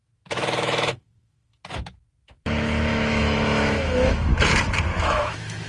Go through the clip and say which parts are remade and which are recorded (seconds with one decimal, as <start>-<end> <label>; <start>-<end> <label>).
0.0-4.3 remade; 4.3-5.0 recorded; 5.0-5.7 remade